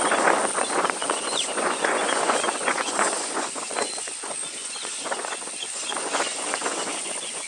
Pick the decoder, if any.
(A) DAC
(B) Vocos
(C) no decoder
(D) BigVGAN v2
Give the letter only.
B